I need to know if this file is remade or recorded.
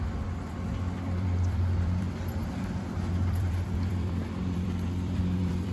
remade